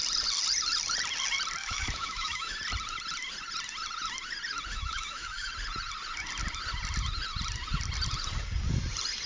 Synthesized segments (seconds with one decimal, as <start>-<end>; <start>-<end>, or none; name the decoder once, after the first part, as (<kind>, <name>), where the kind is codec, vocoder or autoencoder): 1.6-2.6 (autoencoder, DAC-VAE); 4.7-5.5